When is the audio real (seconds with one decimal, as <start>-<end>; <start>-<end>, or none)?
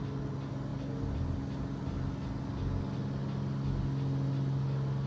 0.0-5.1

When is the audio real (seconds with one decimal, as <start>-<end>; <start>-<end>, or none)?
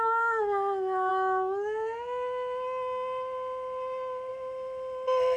0.0-5.4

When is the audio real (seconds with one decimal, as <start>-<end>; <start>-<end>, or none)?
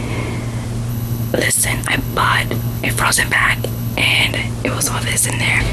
0.0-0.9; 4.3-5.7